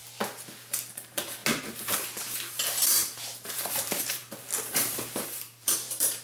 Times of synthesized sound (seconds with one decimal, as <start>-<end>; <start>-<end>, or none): 0.9-1.4; 1.9-4.2; 4.7-6.2